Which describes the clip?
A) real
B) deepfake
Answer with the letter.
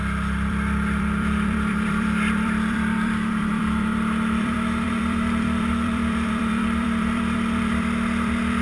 B